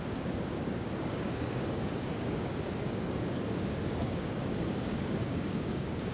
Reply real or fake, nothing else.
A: fake